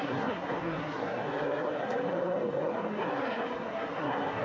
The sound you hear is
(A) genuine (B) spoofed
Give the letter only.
B